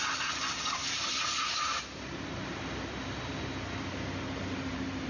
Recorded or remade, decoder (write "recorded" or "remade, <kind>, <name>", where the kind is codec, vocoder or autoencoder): recorded